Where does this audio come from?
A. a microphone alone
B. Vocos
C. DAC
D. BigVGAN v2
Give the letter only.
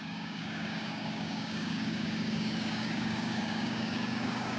C